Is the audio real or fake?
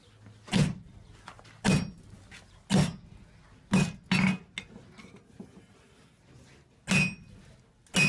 real